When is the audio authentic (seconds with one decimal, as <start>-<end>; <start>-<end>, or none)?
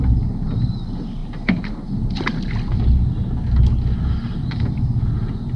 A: 0.0-5.6